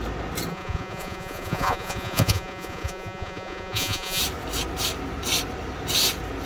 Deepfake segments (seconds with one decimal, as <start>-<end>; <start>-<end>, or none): 0.5-4.2